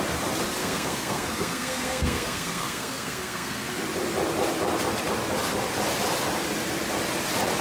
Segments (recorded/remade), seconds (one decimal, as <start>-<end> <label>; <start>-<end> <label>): 0.0-0.6 recorded; 0.6-3.7 remade; 3.7-7.6 recorded